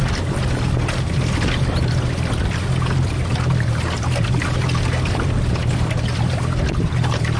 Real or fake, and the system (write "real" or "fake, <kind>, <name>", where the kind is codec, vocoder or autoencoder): real